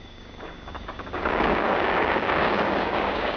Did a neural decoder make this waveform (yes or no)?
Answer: yes